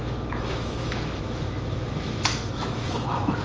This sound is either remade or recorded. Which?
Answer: remade